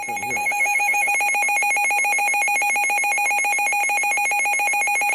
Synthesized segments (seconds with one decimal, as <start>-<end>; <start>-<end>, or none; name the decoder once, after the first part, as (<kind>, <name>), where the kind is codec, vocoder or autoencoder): 0.4-1.1 (autoencoder, DAC-VAE)